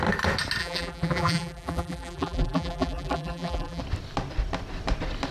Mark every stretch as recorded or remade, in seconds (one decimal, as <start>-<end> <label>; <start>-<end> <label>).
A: 0.0-0.6 recorded; 0.6-3.8 remade; 3.8-5.3 recorded